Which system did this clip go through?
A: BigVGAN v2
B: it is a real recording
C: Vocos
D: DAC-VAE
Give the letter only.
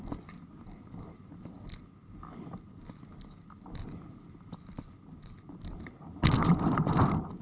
B